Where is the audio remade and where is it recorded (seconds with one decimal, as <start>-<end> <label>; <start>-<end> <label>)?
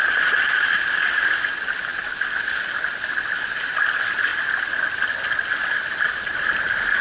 0.0-7.0 recorded